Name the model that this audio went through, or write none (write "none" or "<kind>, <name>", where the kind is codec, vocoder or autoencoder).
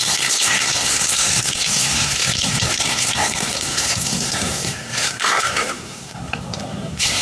codec, SNAC